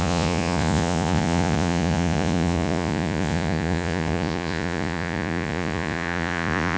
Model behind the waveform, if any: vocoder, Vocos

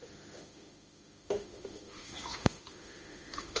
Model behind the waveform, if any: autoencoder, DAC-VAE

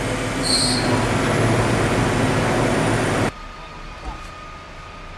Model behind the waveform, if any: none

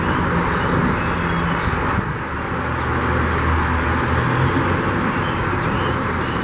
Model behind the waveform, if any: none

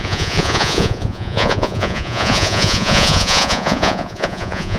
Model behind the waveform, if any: vocoder, Vocos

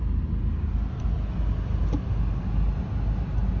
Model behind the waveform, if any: none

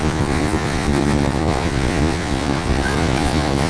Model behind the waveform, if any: vocoder, Vocos